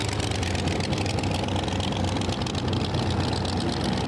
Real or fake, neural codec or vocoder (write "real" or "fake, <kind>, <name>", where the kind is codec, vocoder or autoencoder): real